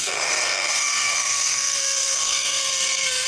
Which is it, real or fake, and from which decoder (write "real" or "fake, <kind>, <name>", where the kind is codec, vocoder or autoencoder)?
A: fake, codec, SNAC